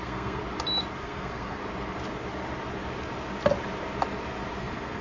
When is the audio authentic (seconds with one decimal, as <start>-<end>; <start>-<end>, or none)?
0.4-1.0; 1.6-4.6